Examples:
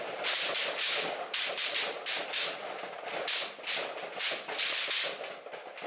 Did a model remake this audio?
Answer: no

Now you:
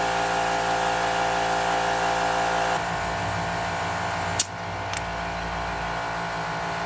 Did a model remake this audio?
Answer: no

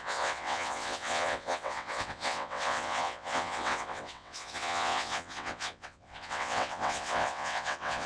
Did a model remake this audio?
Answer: yes